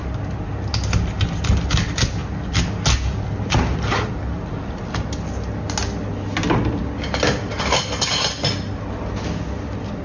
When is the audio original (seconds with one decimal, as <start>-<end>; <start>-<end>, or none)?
0.0-10.0